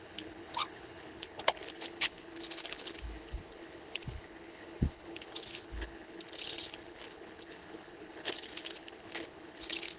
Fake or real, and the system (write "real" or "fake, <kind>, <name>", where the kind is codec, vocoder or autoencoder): fake, codec, HILCodec